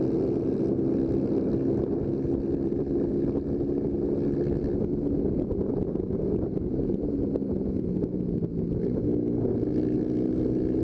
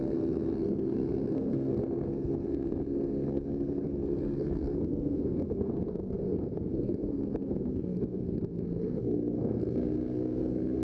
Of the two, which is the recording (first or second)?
first